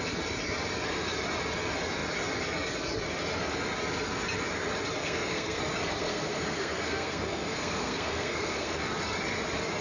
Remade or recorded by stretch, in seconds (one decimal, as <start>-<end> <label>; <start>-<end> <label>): 0.0-5.0 recorded; 5.0-5.6 remade; 5.6-6.0 recorded; 6.0-8.8 remade; 8.8-9.8 recorded